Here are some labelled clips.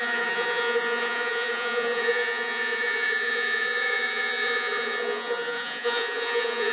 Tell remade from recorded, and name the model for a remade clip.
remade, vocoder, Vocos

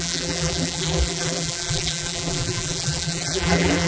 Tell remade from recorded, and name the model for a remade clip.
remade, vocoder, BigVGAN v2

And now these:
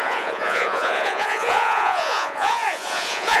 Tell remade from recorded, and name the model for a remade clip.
remade, vocoder, Vocos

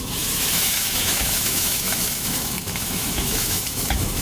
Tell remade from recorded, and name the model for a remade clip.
remade, autoencoder, DAC-VAE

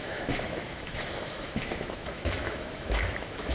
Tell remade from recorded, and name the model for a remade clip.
remade, autoencoder, DAC-VAE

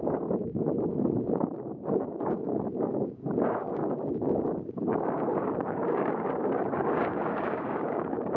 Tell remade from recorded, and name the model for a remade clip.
remade, codec, DAC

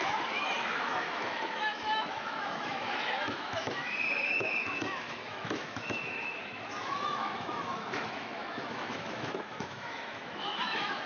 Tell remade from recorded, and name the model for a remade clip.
remade, autoencoder, DAC-VAE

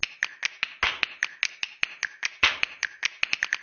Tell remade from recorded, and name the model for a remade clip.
recorded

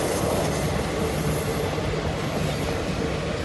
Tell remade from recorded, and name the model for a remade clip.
recorded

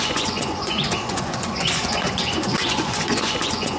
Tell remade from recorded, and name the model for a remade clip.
remade, vocoder, Vocos